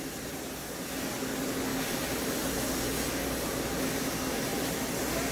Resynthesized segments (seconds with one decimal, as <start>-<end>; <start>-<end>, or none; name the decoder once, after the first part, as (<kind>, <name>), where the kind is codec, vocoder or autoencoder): none